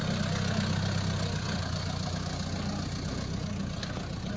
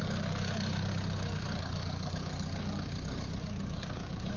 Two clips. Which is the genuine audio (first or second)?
first